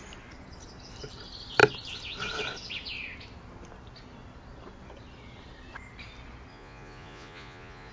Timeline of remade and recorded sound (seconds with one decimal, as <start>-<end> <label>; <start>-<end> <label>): 0.0-6.5 recorded; 6.5-7.9 remade